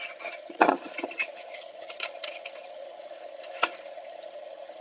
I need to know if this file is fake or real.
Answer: fake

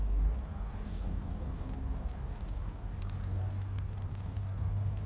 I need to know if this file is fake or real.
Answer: fake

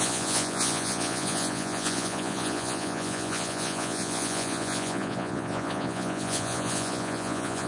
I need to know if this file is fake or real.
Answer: fake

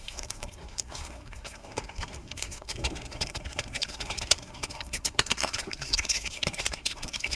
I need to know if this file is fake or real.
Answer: fake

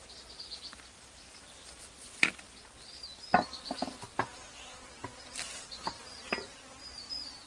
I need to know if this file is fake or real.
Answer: real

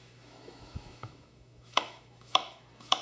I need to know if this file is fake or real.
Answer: fake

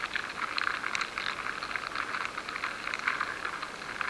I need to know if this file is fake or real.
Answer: real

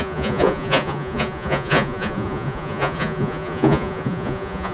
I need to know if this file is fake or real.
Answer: fake